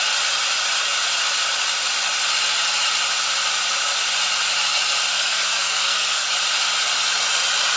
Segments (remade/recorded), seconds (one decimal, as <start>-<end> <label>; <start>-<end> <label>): 0.0-5.1 recorded; 5.1-6.3 remade; 6.3-7.8 recorded